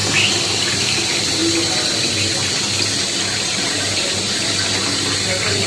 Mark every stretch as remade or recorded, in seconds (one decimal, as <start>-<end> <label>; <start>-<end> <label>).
0.0-5.7 recorded